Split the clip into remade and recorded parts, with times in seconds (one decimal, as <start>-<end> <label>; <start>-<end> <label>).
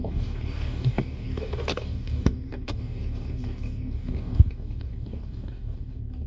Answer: 0.0-6.3 remade